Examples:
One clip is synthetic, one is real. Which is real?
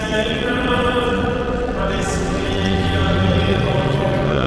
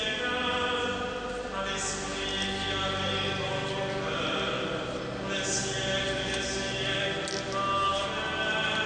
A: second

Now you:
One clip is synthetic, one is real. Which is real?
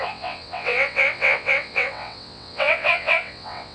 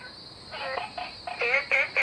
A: second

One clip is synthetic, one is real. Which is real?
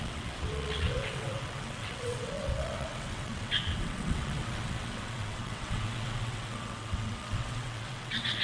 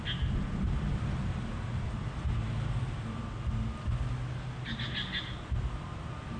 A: second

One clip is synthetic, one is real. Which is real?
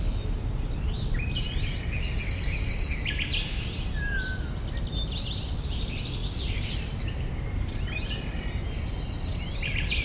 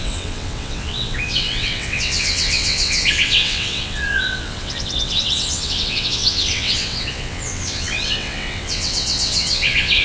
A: first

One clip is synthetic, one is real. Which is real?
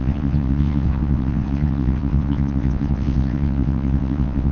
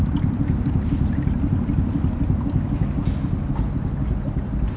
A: second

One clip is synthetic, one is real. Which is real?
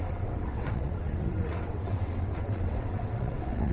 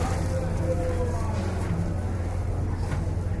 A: second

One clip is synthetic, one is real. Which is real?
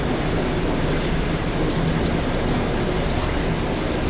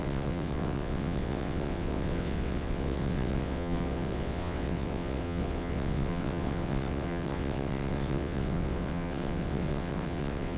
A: first